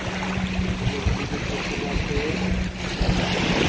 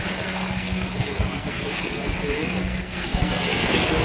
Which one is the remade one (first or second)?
second